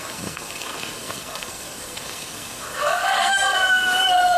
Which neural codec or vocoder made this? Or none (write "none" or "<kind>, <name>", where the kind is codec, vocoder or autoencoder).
codec, SNAC